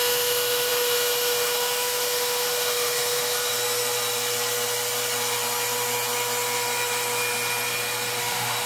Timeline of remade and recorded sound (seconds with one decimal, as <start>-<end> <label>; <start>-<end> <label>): 0.0-3.5 remade; 3.5-8.2 recorded; 8.2-8.7 remade